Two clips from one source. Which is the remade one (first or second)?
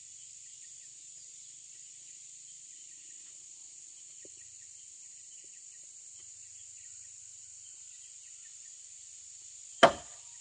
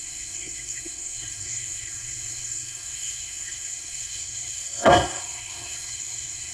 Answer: second